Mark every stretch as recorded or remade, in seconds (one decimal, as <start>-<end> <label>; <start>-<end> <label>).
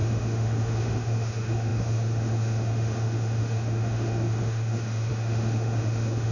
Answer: 0.0-6.3 remade